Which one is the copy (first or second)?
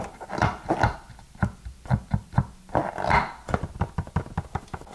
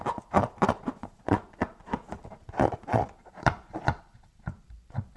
second